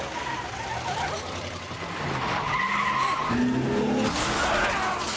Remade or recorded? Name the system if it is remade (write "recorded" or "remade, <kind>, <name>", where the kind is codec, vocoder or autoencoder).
recorded